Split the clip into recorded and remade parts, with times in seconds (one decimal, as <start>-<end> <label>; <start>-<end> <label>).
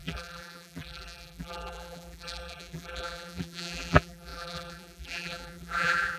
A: 0.0-6.2 remade